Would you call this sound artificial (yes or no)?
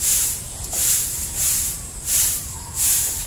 yes